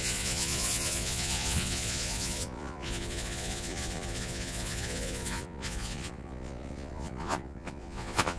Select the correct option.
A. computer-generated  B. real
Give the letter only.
A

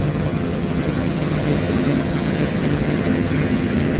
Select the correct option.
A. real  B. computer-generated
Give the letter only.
B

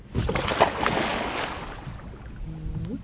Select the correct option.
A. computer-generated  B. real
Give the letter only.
B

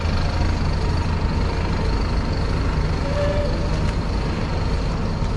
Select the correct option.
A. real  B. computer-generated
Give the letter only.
A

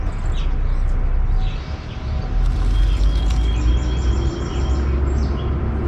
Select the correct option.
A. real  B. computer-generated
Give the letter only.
A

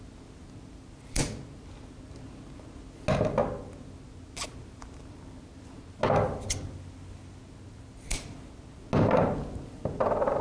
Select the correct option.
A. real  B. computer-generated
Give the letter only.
A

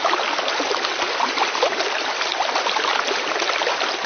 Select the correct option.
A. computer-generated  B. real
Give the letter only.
B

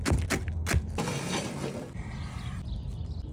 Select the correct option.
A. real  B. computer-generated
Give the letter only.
A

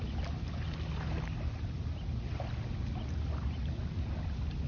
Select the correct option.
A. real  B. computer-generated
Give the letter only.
A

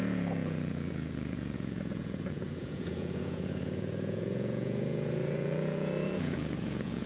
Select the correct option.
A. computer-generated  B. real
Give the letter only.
A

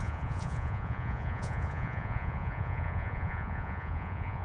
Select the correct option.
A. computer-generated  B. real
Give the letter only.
A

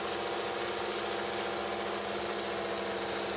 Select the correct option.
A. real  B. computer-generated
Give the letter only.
A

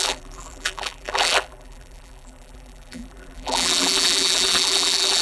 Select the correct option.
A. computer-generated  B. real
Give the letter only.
A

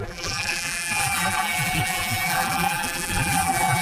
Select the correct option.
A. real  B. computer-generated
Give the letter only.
B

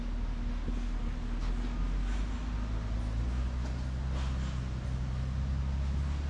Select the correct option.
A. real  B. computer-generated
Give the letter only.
A